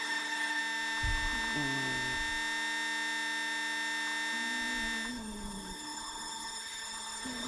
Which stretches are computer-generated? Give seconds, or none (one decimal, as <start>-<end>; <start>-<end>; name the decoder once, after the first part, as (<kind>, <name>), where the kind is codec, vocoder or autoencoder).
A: 0.0-0.6 (codec, HILCodec); 5.1-7.5